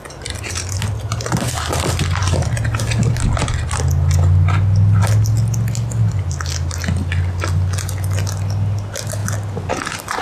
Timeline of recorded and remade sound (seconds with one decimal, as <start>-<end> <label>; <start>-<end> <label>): 0.0-10.2 recorded